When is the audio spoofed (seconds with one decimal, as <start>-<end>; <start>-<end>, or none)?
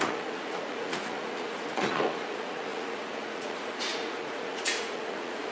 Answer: 0.0-5.5